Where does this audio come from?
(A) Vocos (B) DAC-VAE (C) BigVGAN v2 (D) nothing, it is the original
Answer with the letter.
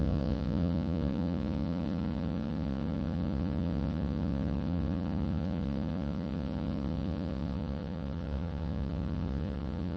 A